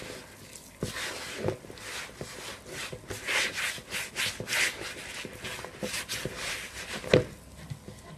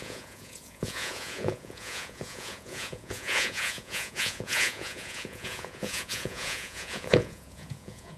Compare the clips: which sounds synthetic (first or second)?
second